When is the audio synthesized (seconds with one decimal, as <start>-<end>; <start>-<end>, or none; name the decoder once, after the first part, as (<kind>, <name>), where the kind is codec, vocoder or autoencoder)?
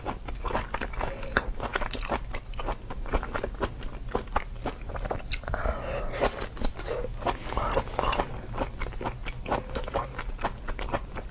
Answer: none